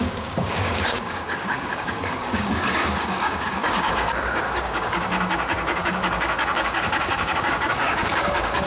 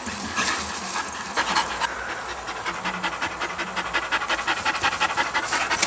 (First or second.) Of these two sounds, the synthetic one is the first